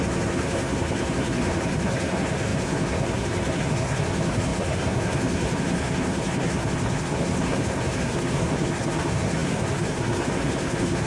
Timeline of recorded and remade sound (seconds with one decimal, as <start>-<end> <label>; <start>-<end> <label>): 0.0-11.1 remade